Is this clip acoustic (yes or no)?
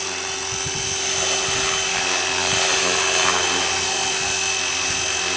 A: yes